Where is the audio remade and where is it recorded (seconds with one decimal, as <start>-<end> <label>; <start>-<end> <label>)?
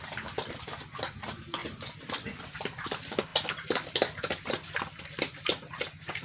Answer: 0.0-1.6 recorded; 1.6-2.4 remade; 2.4-6.2 recorded